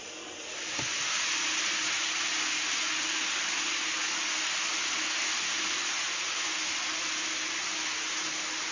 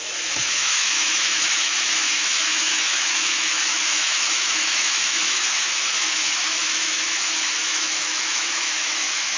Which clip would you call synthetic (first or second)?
second